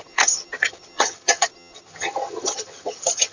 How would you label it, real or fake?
fake